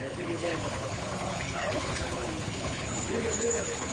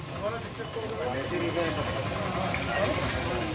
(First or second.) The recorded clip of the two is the second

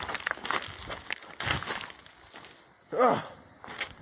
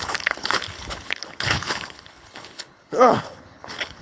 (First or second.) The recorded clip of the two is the first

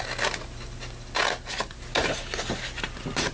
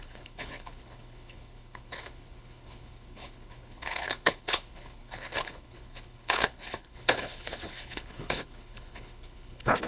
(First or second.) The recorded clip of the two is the first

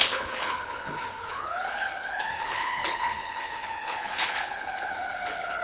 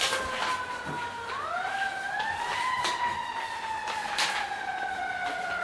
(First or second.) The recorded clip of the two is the second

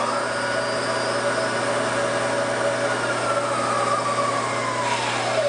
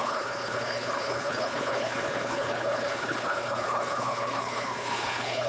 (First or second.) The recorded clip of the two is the first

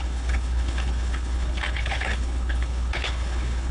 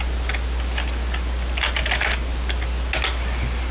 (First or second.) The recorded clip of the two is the second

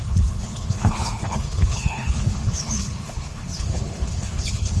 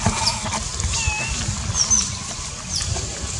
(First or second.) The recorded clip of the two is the second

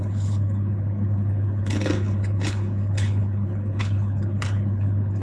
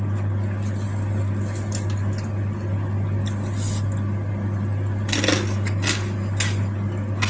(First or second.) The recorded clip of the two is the second